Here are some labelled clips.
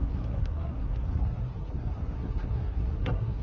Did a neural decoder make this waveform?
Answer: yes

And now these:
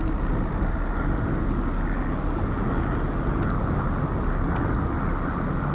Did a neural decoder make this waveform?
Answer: no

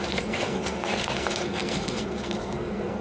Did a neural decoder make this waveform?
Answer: yes